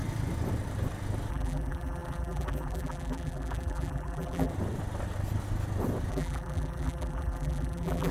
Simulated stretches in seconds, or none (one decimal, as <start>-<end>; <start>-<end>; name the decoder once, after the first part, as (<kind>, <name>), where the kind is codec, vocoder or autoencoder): 1.3-4.5 (vocoder, BigVGAN v2); 6.1-8.1